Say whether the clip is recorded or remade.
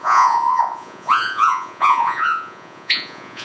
remade